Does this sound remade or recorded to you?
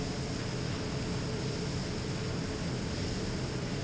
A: recorded